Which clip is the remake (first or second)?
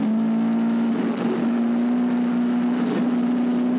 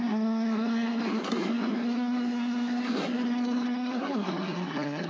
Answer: second